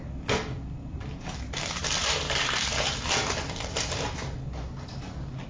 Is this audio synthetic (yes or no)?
no